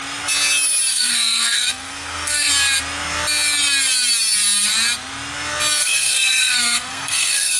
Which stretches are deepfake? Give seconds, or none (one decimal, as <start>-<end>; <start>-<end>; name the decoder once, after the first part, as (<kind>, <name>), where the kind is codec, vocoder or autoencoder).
0.9-2.5 (codec, SNAC); 5.8-7.6